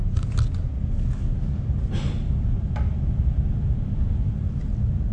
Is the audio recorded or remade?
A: recorded